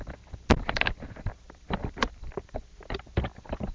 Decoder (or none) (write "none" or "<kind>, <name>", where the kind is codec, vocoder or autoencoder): vocoder, BigVGAN v2